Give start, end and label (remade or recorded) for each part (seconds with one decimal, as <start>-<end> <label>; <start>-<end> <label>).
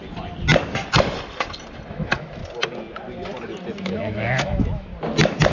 0.0-1.9 recorded; 1.9-2.4 remade; 2.4-3.8 recorded; 3.8-4.9 remade; 4.9-5.5 recorded